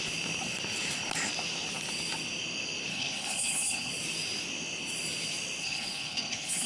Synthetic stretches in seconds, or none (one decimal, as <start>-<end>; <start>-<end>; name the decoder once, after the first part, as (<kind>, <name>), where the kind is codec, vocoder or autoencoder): 2.9-3.9 (codec, HILCodec); 5.6-6.7